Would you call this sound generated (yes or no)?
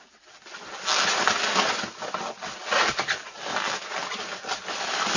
no